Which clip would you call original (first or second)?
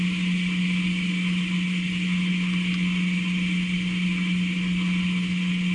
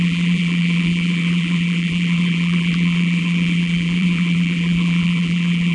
first